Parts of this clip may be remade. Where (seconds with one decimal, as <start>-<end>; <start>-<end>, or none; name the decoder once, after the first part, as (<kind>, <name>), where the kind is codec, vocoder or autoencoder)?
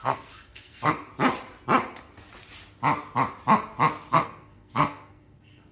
0.0-1.1 (codec, SNAC); 4.1-5.7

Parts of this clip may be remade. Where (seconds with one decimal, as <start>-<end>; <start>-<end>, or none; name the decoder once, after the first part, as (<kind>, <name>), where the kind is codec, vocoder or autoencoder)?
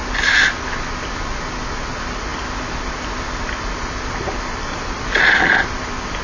none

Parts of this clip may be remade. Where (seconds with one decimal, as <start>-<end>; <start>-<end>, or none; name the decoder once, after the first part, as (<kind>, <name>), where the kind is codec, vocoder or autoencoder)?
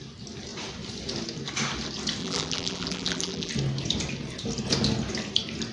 2.2-3.5 (vocoder, BigVGAN v2)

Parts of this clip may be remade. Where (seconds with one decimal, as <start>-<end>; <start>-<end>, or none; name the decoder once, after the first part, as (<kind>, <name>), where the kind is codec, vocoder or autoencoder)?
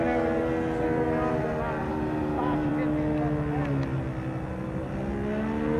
1.8-2.7 (vocoder, BigVGAN v2)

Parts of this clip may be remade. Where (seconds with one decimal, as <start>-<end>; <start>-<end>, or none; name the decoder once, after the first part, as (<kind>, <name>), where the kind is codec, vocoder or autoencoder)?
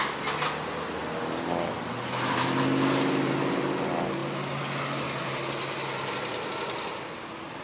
1.0-2.6 (vocoder, BigVGAN v2)